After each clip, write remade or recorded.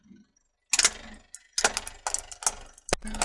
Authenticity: recorded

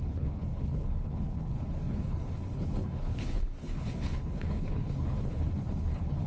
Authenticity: remade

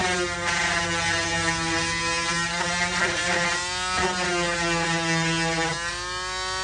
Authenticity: recorded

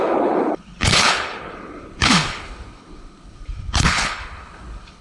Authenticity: remade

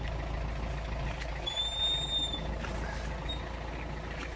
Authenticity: recorded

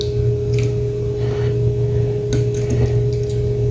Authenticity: recorded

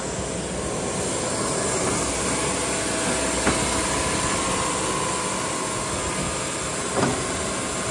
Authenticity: recorded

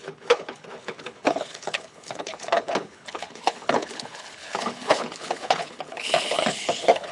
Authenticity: remade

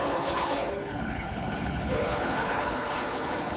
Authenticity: remade